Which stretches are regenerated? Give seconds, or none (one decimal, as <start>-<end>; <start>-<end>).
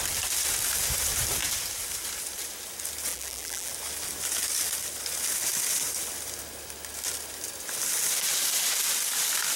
3.1-3.7